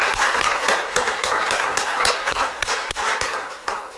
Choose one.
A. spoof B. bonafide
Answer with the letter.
A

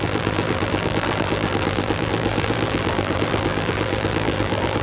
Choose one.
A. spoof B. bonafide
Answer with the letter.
A